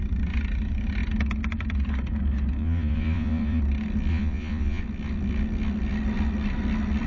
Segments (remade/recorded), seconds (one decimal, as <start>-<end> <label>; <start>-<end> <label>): 0.0-2.6 recorded; 2.6-3.6 remade; 3.6-4.1 recorded; 4.1-4.8 remade; 4.8-7.1 recorded